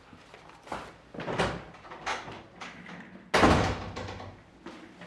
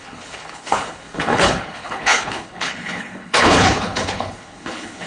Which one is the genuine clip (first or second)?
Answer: first